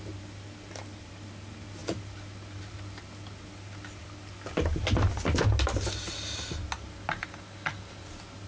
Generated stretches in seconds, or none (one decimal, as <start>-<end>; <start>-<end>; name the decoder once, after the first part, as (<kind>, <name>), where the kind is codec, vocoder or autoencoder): none

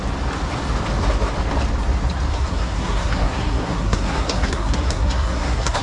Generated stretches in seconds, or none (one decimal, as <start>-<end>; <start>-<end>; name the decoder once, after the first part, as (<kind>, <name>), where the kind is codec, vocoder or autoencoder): 2.3-5.8 (codec, SNAC)

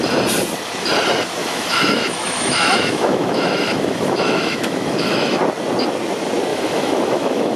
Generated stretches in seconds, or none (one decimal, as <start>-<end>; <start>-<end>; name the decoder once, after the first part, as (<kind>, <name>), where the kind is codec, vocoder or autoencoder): 1.4-5.4 (autoencoder, DAC-VAE); 6.5-7.6

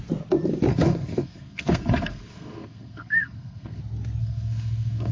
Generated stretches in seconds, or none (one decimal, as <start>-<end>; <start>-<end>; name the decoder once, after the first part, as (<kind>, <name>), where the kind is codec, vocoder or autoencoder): 0.7-3.8 (codec, SNAC); 4.2-5.1

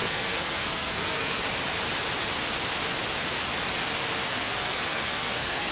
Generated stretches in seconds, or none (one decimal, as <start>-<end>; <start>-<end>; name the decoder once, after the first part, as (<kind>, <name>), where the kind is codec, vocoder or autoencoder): 0.0-1.4 (codec, SNAC); 4.3-5.7

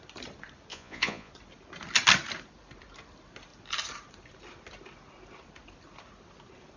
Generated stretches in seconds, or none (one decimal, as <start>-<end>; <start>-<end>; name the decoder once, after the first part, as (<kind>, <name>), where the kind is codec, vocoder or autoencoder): 0.7-1.3 (vocoder, Vocos)